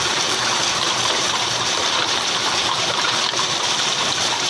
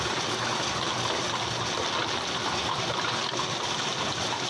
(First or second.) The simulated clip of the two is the first